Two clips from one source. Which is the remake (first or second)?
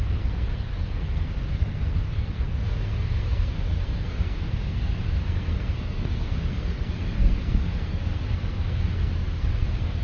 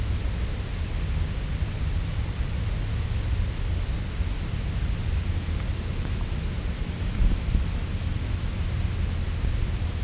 first